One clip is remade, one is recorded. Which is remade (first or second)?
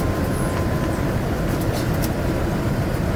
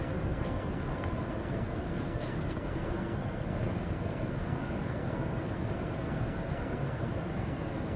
second